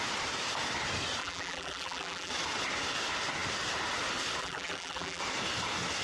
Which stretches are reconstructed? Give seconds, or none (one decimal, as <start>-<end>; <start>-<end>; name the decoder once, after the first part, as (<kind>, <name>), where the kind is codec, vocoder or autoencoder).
1.2-2.3 (vocoder, BigVGAN v2); 4.4-5.2